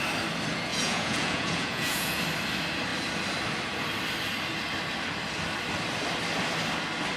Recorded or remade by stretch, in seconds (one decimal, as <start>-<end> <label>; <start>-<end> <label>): 0.0-0.7 recorded; 0.7-2.2 remade; 2.2-7.2 recorded